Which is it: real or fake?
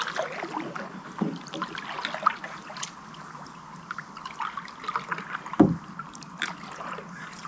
real